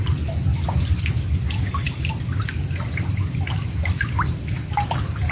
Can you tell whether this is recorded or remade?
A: recorded